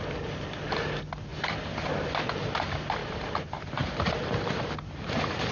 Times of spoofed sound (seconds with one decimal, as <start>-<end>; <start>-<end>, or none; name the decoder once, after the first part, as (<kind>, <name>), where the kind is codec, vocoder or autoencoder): 1.3-1.9 (vocoder, BigVGAN v2); 3.0-5.5